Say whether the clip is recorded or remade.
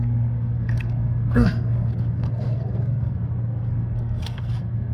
remade